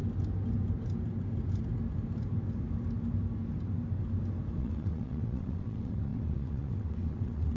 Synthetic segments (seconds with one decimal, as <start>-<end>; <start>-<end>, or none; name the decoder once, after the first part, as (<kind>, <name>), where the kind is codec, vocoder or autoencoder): 4.6-7.6 (vocoder, WaveNeXt)